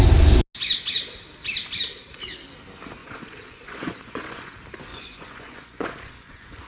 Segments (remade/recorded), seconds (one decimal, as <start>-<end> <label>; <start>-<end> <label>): 0.0-3.0 recorded; 3.0-4.5 remade; 4.5-4.9 recorded; 4.9-6.7 remade